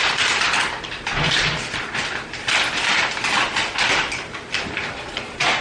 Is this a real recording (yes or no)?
no